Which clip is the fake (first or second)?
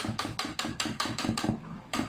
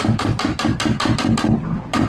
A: first